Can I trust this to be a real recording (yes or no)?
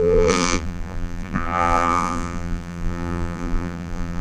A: no